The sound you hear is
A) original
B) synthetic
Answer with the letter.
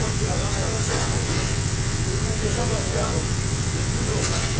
B